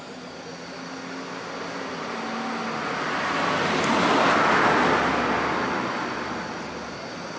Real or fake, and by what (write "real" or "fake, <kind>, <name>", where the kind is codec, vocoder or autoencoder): real